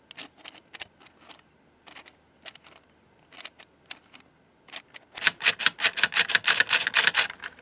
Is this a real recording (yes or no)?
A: yes